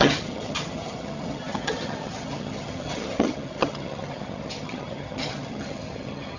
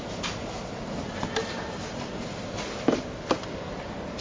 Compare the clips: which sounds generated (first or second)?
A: first